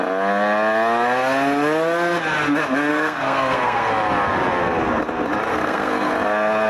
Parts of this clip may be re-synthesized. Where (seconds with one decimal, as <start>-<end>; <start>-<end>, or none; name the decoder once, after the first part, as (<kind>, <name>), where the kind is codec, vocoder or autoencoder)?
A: 2.9-3.9 (codec, SNAC); 5.5-6.1